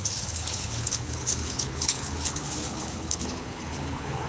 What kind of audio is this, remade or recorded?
remade